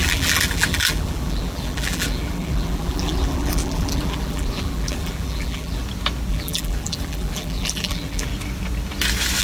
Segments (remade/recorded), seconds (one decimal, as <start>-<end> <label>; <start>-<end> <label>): 0.0-5.8 remade; 5.8-6.3 recorded; 6.3-8.3 remade; 8.3-9.4 recorded